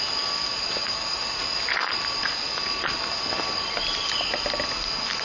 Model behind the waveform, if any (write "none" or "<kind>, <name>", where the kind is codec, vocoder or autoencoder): none